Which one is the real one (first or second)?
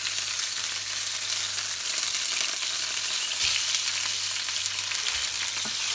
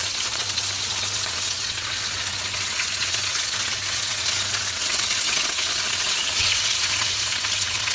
first